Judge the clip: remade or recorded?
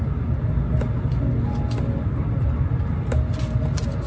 recorded